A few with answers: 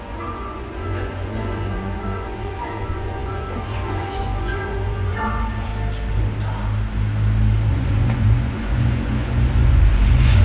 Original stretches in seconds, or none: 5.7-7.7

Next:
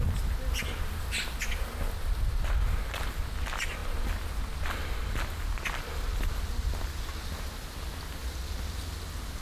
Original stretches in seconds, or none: 0.0-9.4

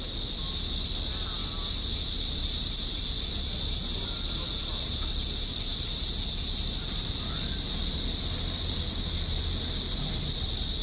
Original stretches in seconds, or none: 0.0-10.8

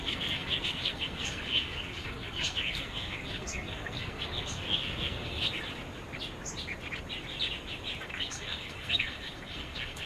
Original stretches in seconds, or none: 5.5-8.0

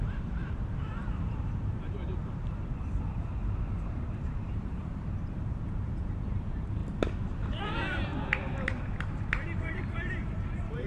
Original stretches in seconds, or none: 2.7-4.5; 6.8-7.6; 8.1-9.6